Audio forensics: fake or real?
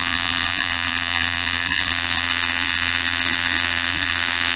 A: fake